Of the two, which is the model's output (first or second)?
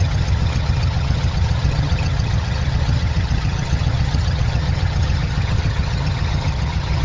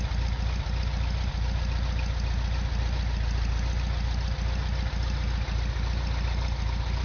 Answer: first